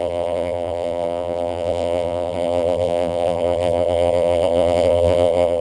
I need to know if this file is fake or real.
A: fake